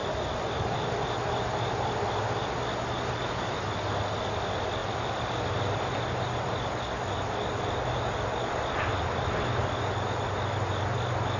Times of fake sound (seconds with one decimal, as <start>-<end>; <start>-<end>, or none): none